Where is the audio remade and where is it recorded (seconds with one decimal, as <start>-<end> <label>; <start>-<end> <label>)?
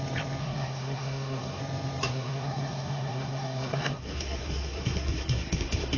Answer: 0.0-0.4 recorded; 0.4-1.6 remade; 1.6-2.1 recorded; 2.1-6.0 remade